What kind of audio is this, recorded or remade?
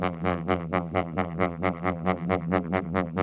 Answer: remade